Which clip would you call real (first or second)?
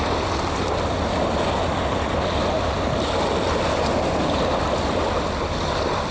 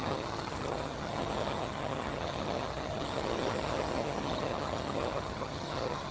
first